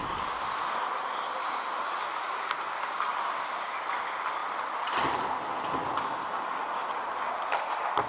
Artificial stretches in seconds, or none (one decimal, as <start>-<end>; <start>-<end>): none